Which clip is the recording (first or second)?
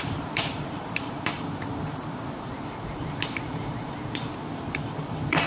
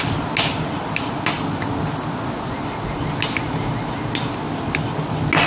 second